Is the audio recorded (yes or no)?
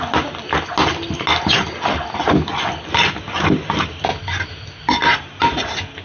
yes